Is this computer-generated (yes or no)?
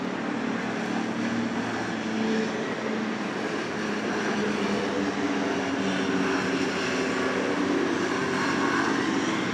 no